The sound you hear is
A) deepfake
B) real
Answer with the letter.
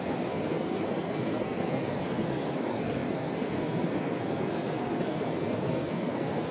A